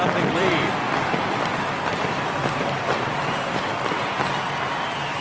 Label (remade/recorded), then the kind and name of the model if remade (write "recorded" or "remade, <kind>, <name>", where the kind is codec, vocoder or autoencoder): remade, vocoder, BigVGAN v2